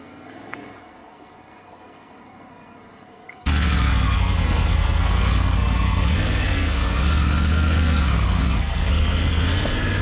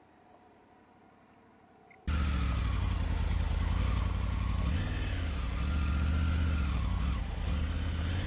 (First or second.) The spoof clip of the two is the first